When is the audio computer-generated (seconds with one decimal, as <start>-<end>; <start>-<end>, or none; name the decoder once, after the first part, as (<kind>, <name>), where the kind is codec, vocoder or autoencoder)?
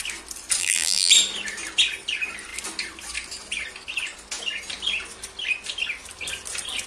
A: 0.6-1.1 (vocoder, BigVGAN v2)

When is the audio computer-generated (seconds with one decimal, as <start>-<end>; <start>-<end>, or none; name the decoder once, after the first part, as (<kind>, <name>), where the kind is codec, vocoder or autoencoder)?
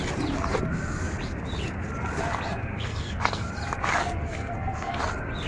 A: 2.5-3.5 (codec, SNAC); 4.0-5.0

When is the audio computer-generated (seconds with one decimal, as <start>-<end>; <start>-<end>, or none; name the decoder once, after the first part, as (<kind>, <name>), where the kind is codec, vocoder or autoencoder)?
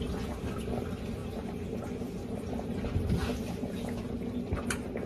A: 1.2-1.8 (vocoder, BigVGAN v2); 2.2-3.9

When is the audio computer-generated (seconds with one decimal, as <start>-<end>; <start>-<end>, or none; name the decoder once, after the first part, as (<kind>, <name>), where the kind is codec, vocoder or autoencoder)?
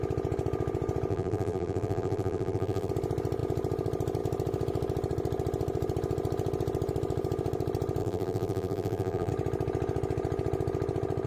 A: 1.1-2.9 (vocoder, BigVGAN v2); 8.0-9.3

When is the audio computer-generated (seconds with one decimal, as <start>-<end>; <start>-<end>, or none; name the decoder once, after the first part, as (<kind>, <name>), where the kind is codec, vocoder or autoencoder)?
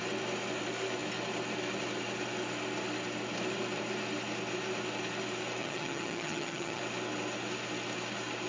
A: 5.6-6.8 (vocoder, HiFi-GAN)